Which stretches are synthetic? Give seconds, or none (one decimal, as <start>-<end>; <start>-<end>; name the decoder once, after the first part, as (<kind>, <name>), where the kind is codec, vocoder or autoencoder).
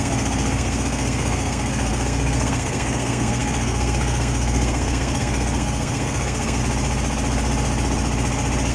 0.0-6.6 (codec, SNAC)